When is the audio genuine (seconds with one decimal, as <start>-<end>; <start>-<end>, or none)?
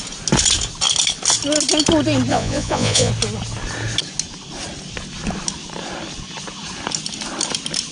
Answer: 0.0-2.3; 3.1-7.9